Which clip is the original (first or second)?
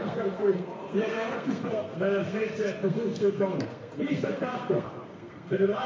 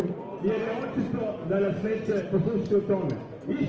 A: second